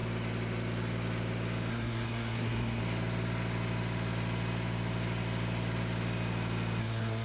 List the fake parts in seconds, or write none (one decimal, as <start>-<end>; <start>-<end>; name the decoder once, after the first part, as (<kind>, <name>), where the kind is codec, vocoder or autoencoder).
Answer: 1.7-2.8 (codec, SNAC); 6.8-7.2